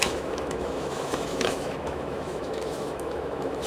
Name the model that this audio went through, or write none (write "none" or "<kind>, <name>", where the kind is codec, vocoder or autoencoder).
autoencoder, DAC-VAE